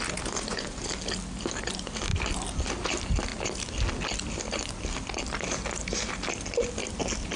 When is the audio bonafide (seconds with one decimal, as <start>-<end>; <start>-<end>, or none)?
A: 0.0-7.4